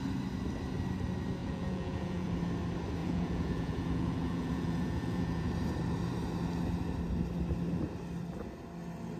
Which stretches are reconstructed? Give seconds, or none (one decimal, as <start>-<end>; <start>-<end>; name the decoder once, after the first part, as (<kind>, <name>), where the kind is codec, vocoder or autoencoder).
1.4-2.3 (vocoder, Vocos); 3.0-5.5